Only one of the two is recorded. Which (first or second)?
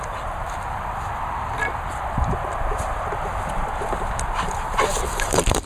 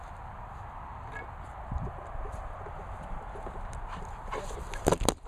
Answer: second